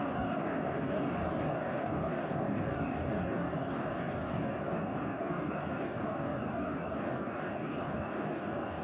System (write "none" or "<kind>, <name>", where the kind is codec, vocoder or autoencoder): codec, DAC